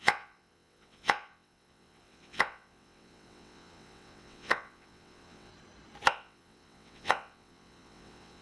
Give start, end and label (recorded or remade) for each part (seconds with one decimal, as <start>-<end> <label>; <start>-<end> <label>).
0.0-5.5 remade; 5.5-6.1 recorded; 6.1-8.4 remade